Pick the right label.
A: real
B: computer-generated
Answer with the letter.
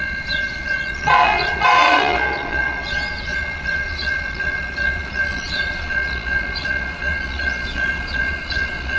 B